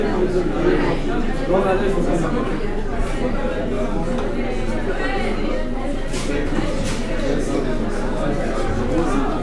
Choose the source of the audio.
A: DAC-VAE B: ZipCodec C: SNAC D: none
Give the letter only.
D